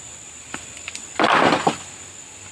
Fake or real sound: real